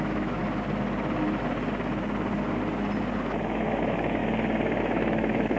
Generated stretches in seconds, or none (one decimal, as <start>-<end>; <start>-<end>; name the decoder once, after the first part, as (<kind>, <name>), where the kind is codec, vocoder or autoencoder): 0.0-0.4 (autoencoder, DAC-VAE); 3.4-4.2; 4.8-5.6